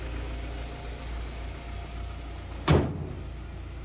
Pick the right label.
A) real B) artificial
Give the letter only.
A